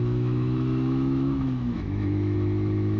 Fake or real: fake